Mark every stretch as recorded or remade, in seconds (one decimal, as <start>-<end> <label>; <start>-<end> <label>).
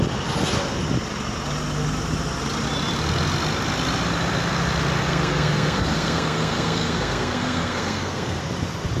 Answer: 0.0-5.0 recorded; 5.0-8.4 remade; 8.4-9.0 recorded